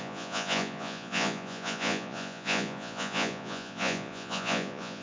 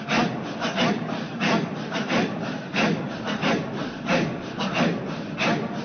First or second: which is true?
second